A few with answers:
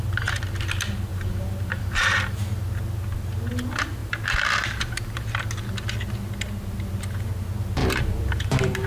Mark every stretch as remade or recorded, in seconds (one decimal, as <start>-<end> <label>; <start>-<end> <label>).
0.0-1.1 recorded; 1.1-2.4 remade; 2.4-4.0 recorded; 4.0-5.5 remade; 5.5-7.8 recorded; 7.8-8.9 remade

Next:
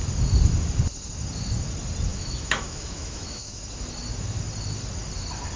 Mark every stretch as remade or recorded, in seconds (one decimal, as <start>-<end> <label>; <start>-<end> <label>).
0.0-2.1 recorded; 2.1-3.6 remade; 3.6-5.6 recorded

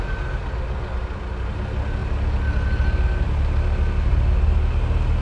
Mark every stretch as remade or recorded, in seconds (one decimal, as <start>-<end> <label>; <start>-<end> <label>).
0.0-5.2 recorded

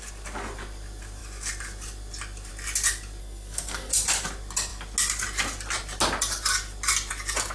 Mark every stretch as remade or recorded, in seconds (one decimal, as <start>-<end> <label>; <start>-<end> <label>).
0.0-3.2 recorded; 3.2-3.9 remade; 3.9-7.5 recorded